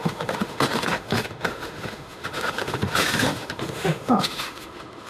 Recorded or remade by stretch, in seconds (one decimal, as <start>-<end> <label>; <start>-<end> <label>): 0.0-5.1 remade